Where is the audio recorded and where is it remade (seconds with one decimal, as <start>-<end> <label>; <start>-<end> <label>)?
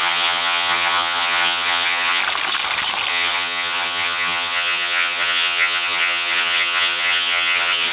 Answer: 0.0-2.2 remade; 2.2-3.1 recorded; 3.1-7.9 remade